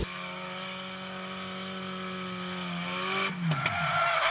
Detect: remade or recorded recorded